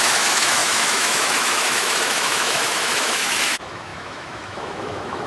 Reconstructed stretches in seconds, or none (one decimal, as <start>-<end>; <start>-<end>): 0.0-5.3